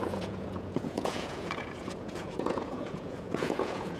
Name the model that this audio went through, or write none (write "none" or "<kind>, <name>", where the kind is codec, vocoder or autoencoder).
vocoder, Vocos